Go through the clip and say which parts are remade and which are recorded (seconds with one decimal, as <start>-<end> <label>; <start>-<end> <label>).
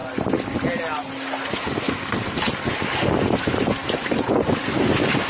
0.0-5.3 recorded